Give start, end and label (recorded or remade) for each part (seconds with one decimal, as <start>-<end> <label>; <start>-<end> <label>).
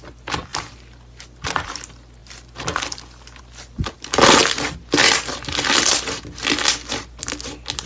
0.0-7.9 recorded